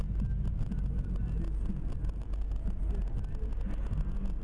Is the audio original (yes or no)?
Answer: yes